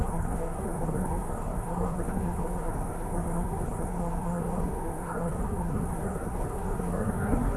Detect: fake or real fake